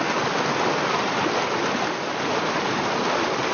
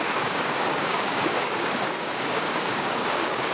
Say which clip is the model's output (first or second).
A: second